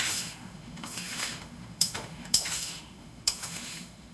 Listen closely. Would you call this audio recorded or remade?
remade